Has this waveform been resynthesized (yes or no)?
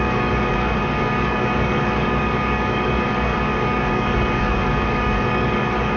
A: yes